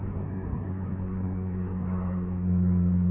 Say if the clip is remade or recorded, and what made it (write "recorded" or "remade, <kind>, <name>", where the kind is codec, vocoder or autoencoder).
remade, codec, SNAC